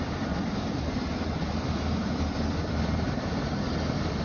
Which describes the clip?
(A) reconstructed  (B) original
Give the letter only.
B